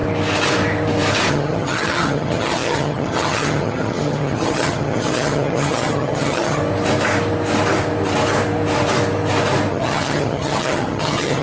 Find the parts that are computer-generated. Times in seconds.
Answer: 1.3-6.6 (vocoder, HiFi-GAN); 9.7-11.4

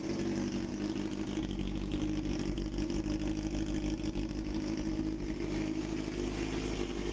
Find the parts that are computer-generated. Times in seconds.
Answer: none

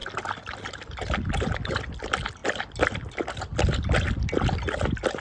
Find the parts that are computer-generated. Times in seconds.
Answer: none